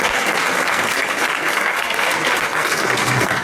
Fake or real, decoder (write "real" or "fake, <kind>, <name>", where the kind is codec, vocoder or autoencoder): fake, codec, SNAC